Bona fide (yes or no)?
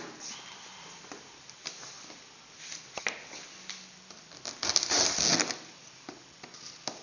yes